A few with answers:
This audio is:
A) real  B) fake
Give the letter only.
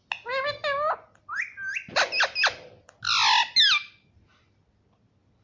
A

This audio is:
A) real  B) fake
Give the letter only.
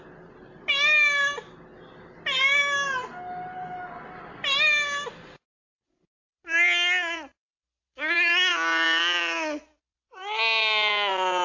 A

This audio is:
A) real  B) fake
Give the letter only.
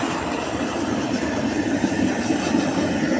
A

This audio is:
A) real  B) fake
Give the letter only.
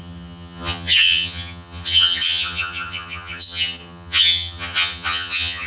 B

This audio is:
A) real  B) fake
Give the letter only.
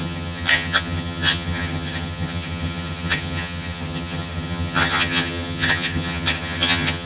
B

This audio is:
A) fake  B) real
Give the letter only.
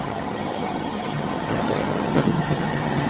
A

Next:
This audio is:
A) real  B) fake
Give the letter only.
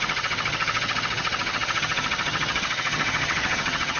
B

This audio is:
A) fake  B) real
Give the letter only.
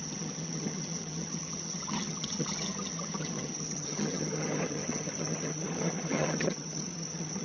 A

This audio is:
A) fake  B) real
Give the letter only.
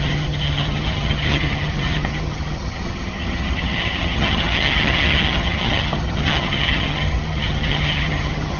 A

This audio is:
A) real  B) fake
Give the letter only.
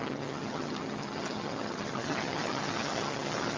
B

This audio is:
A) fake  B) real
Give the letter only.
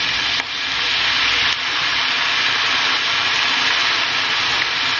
B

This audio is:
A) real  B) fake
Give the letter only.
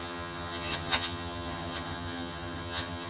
B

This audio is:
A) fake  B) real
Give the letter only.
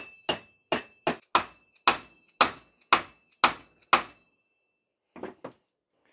B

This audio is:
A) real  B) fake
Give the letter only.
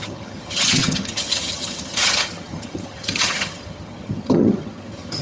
B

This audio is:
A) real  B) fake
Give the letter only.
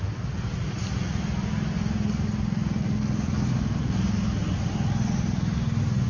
A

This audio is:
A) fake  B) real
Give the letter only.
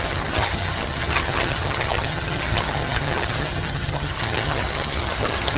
A